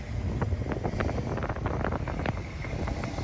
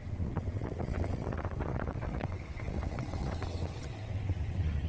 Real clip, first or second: first